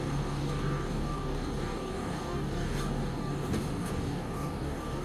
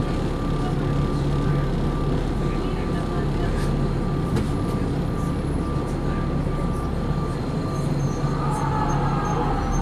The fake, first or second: first